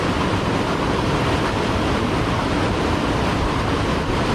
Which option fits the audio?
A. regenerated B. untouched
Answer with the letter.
B